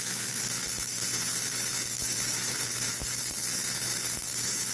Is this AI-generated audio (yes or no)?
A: yes